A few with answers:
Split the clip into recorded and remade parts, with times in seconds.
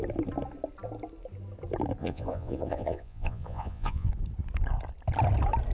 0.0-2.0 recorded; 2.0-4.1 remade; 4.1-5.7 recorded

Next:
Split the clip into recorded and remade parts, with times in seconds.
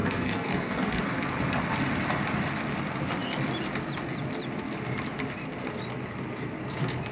0.0-1.0 remade; 1.0-7.1 recorded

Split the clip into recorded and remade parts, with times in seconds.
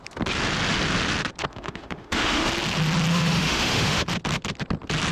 0.0-1.5 recorded; 1.5-2.5 remade; 2.5-3.1 recorded; 3.1-4.1 remade; 4.1-5.1 recorded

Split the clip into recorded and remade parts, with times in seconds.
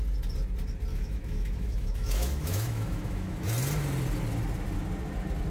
0.0-0.9 recorded; 0.9-3.5 remade; 3.5-5.5 recorded